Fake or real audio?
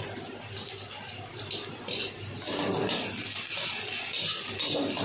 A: real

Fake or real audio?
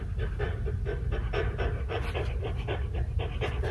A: real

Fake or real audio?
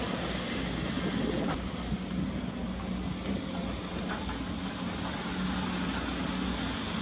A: real